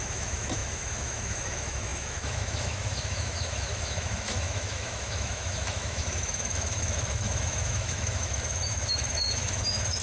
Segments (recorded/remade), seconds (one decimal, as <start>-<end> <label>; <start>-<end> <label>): 0.0-10.0 remade